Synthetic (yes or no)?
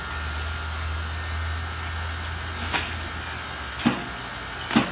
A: no